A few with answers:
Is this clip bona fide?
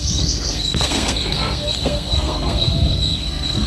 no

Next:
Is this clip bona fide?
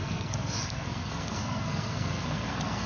no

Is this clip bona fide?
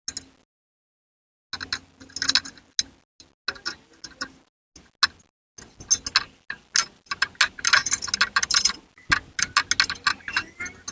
yes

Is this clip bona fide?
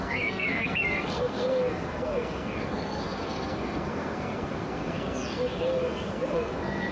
no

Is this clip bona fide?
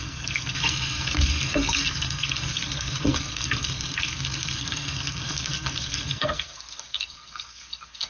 no